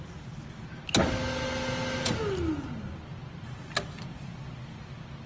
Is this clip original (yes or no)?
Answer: yes